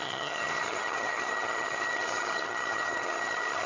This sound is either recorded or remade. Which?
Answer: remade